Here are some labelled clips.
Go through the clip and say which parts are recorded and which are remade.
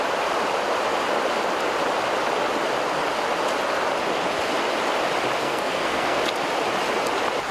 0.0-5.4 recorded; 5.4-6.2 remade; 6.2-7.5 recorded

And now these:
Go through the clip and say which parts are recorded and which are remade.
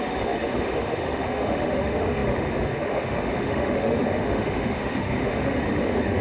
0.0-6.2 remade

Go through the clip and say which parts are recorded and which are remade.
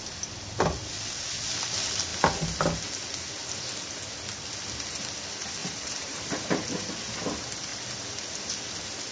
0.0-5.6 recorded; 5.6-7.2 remade; 7.2-9.1 recorded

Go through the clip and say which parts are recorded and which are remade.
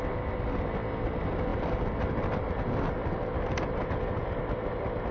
0.0-1.5 recorded; 1.5-4.4 remade; 4.4-5.1 recorded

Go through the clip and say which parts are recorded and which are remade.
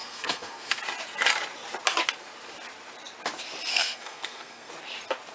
0.0-0.8 remade; 0.8-3.7 recorded; 3.7-4.7 remade; 4.7-5.3 recorded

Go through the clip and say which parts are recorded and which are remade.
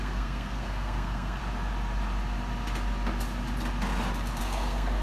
0.0-1.4 remade; 1.4-4.4 recorded; 4.4-5.0 remade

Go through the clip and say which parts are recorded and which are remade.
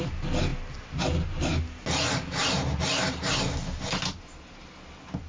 0.0-5.3 recorded